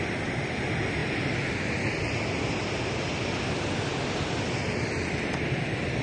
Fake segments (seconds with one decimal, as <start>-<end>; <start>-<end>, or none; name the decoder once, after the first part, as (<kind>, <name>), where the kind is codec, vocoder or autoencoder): none